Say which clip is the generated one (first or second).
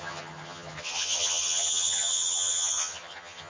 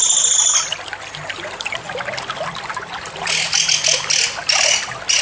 first